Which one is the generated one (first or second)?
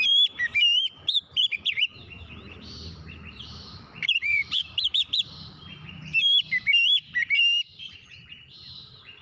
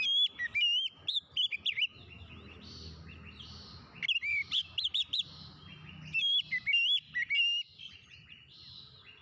first